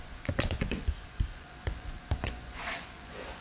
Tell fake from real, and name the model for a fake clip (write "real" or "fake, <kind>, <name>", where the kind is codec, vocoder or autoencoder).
fake, vocoder, Vocos